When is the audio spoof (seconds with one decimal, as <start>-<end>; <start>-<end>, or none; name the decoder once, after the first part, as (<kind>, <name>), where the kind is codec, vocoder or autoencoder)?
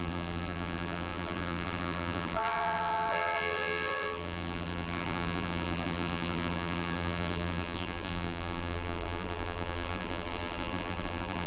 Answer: 0.0-11.5 (vocoder, BigVGAN v2)